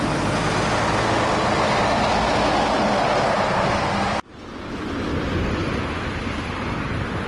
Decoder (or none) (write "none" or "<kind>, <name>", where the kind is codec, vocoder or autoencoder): none